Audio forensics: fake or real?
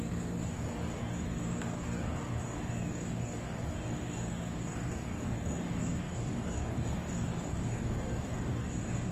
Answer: fake